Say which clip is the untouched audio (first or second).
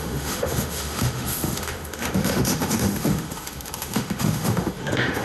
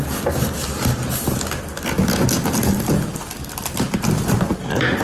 second